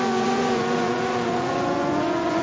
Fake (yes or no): yes